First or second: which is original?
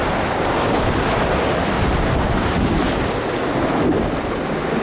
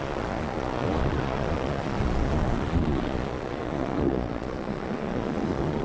first